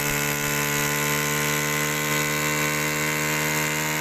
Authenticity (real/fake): real